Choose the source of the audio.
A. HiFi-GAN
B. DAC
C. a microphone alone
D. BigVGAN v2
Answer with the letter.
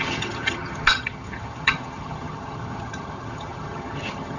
A